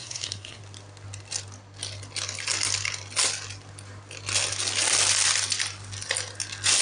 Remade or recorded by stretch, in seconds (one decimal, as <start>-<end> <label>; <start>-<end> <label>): 0.0-0.6 remade; 0.6-6.8 recorded